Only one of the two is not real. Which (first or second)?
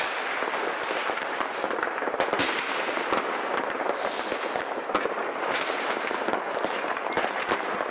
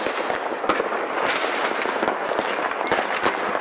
first